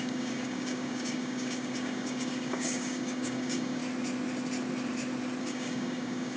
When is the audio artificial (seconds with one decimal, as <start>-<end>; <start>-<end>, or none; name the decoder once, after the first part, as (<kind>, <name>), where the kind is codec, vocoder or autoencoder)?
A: 0.0-3.8 (codec, DAC); 5.4-6.4